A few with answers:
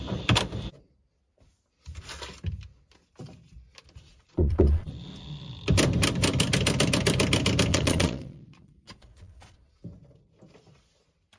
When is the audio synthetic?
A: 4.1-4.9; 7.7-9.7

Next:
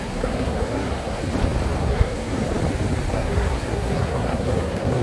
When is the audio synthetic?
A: 0.0-1.2; 1.8-2.5; 3.1-5.0

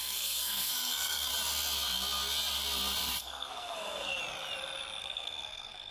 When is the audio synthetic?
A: 0.0-1.3; 3.2-4.2; 5.0-5.9

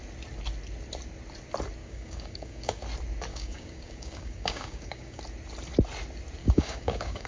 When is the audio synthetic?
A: 1.8-2.8; 3.3-5.2; 6.4-7.3

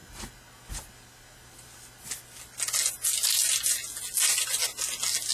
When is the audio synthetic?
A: none

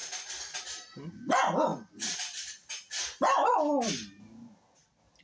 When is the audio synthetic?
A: none

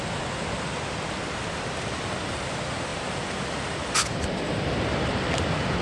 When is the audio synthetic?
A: none